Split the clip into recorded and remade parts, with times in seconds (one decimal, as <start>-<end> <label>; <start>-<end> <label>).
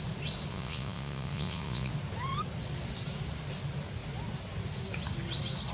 0.0-0.5 recorded; 0.5-1.9 remade; 1.9-5.7 recorded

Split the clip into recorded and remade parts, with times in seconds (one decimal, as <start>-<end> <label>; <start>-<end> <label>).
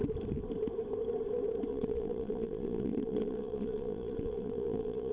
0.0-1.7 recorded; 1.7-5.1 remade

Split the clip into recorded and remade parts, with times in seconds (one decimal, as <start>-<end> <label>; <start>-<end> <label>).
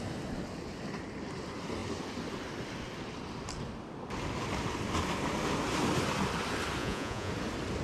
0.0-6.8 recorded; 6.8-7.3 remade; 7.3-7.8 recorded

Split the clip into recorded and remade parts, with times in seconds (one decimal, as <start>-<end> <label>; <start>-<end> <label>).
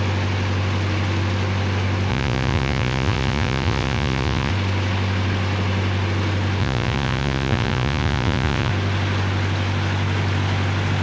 0.0-2.1 recorded; 2.1-4.5 remade; 4.5-6.6 recorded; 6.6-8.7 remade; 8.7-11.0 recorded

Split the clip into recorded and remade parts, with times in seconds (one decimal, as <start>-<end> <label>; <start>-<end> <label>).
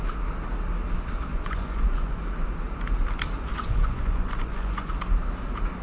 0.0-1.3 recorded; 1.3-2.2 remade; 2.2-3.5 recorded; 3.5-4.9 remade; 4.9-5.8 recorded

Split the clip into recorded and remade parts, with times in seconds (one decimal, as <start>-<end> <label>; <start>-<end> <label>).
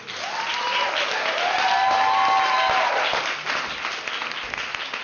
0.0-5.0 recorded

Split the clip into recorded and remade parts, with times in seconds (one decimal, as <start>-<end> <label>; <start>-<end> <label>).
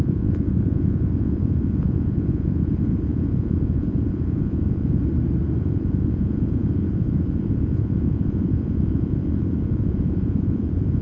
0.0-5.0 remade; 5.0-5.6 recorded; 5.6-11.0 remade